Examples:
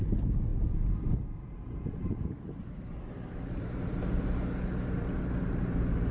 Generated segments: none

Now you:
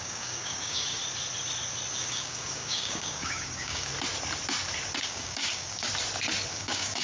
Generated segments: 0.0-1.0 (codec, DAC); 1.9-3.9; 5.0-5.9; 6.5-7.0

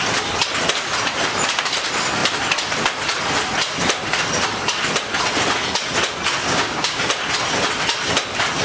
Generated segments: 6.4-7.0 (codec, DAC)

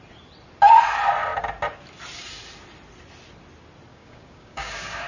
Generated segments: 3.9-5.1 (codec, DAC)

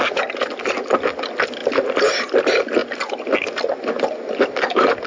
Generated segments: none

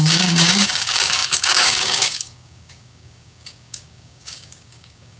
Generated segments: 0.0-5.2 (codec, DAC)

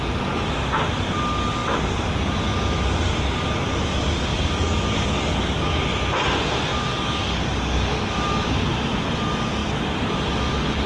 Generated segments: 4.3-5.8 (codec, DAC); 6.7-8.1